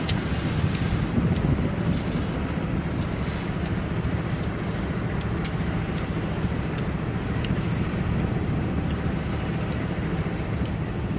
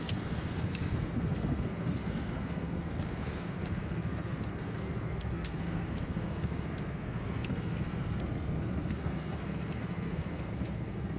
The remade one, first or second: second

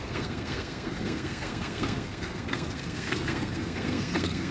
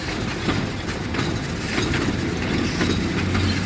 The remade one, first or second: first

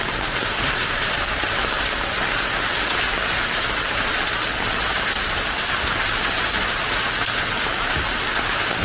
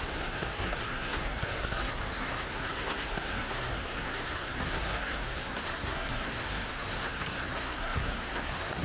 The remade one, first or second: second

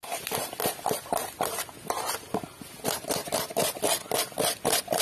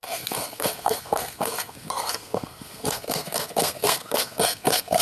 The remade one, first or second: second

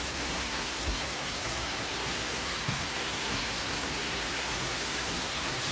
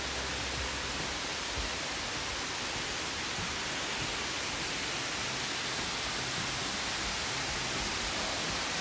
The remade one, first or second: first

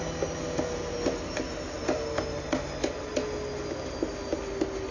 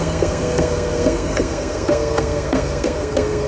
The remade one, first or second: second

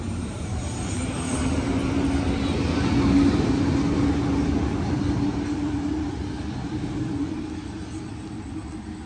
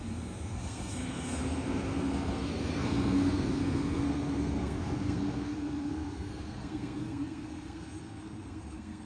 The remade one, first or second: second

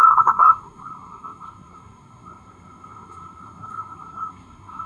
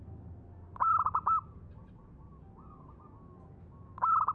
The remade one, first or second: first